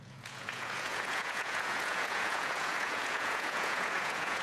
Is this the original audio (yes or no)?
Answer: no